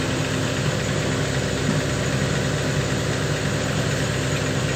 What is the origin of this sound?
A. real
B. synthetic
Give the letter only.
A